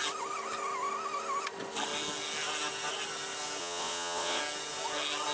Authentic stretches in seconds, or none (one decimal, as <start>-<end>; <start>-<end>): 0.0-3.6; 4.4-5.3